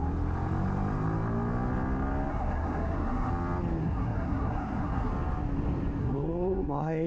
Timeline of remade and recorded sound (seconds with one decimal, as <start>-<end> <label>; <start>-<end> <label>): 0.0-2.3 recorded; 2.3-3.3 remade; 3.3-3.8 recorded; 3.8-5.1 remade; 5.1-6.0 recorded; 6.0-7.1 remade